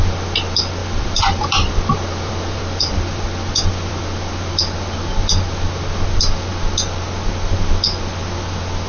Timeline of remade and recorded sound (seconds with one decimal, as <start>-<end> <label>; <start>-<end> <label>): 0.0-0.8 recorded; 0.8-4.0 remade; 4.0-8.9 recorded